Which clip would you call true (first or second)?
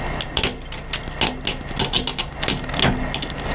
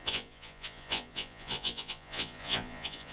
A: first